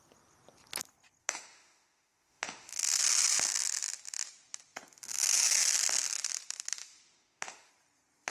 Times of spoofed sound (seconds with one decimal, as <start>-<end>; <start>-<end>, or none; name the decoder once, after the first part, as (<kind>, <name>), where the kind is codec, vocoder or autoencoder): 1.2-3.0 (autoencoder, DAC-VAE); 6.8-7.7